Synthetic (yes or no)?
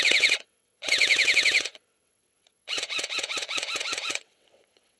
yes